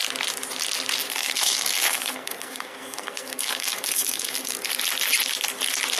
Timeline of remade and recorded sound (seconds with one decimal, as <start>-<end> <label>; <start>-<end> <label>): 0.0-1.1 recorded; 1.1-4.7 remade; 4.7-6.0 recorded